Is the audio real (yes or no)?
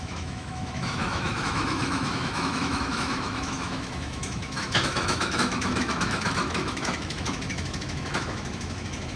no